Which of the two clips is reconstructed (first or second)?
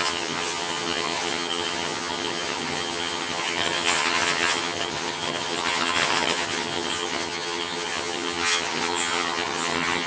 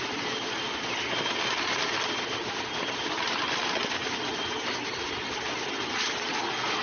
first